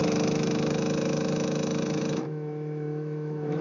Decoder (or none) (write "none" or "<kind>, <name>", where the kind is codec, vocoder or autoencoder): autoencoder, DAC-VAE